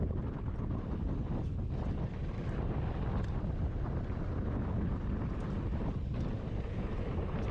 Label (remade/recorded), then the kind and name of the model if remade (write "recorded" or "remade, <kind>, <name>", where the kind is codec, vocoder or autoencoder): recorded